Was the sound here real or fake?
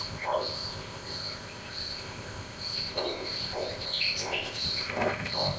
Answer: fake